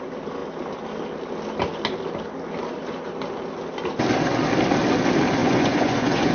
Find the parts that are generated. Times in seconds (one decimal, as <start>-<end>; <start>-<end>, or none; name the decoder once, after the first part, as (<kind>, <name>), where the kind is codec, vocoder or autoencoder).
5.4-6.3 (vocoder, Vocos)

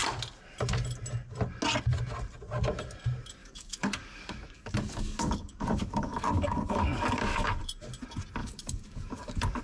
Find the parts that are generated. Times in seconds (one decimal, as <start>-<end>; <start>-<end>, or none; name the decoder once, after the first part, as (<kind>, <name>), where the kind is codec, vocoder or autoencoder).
3.4-7.6 (codec, DAC); 8.4-9.6

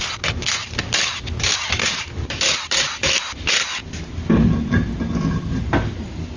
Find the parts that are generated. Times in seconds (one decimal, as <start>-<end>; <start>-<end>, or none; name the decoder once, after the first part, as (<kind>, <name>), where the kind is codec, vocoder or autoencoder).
none

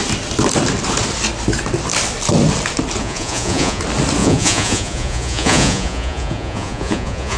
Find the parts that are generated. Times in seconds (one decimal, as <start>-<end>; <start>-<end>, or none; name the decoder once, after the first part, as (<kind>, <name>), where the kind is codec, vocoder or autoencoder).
3.0-3.8 (vocoder, Vocos); 4.2-7.4

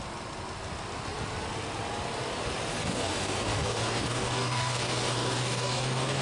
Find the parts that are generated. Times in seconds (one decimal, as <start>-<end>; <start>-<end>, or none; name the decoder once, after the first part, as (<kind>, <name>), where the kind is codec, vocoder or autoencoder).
2.7-6.2 (codec, DAC)